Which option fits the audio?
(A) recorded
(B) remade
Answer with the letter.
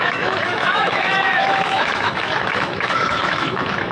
B